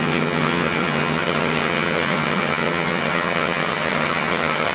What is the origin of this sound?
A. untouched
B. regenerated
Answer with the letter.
B